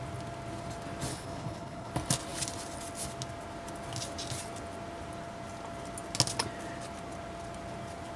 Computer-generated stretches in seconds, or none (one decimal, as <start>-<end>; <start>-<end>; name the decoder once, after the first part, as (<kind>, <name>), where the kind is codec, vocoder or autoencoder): 1.1-1.9 (codec, HILCodec)